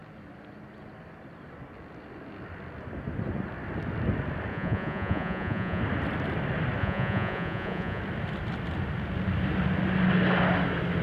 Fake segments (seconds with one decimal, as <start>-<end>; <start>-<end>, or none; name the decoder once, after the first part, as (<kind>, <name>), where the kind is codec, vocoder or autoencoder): 4.5-5.8 (vocoder, Vocos); 6.8-8.0